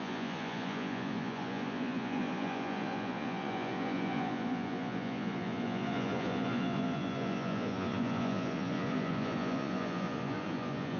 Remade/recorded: remade